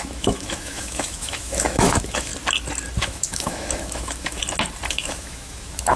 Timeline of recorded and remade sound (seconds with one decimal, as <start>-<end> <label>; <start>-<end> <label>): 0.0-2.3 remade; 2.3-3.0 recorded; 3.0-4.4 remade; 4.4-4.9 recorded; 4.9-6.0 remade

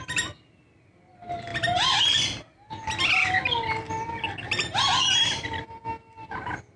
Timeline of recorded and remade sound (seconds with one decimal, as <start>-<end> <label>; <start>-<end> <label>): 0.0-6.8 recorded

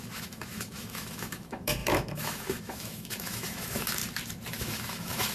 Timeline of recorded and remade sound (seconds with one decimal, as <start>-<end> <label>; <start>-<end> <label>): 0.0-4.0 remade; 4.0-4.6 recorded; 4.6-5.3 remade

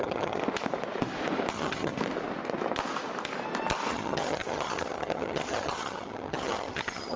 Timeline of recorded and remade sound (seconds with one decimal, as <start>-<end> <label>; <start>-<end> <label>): 0.0-0.4 remade; 0.4-1.5 recorded; 1.5-1.9 remade; 1.9-3.9 recorded; 3.9-7.2 remade